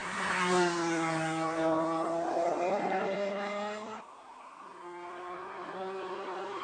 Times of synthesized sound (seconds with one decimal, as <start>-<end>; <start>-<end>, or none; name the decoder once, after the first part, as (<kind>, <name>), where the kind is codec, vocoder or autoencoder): 0.0-6.6 (codec, SNAC)